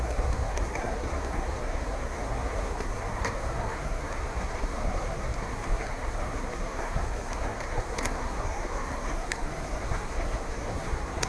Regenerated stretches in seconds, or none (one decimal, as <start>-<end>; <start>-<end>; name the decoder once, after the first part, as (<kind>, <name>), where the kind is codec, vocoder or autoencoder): 0.0-11.3 (codec, SNAC)